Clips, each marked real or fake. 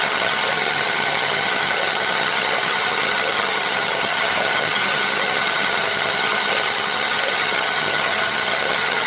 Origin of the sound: fake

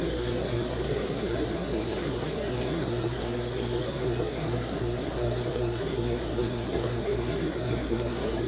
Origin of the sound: fake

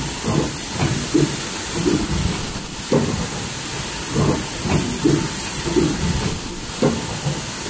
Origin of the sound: real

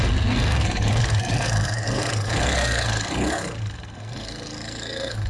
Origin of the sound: fake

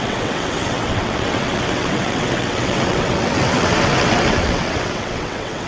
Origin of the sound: fake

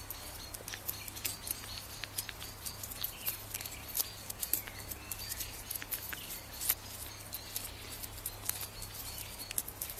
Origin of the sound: real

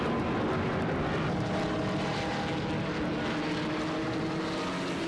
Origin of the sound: real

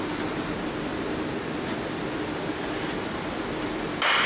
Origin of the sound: real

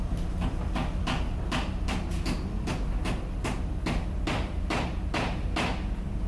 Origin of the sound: real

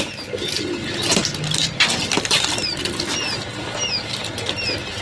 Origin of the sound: real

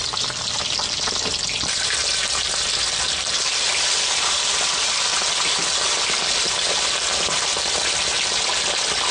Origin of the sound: real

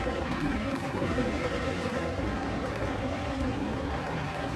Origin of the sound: fake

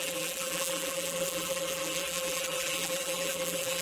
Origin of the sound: fake